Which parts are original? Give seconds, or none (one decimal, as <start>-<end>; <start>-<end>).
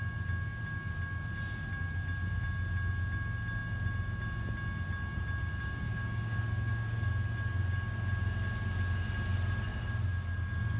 0.0-5.9; 7.1-10.8